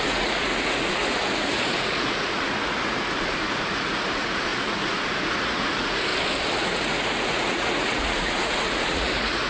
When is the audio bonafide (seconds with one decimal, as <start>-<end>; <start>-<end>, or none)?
6.1-6.6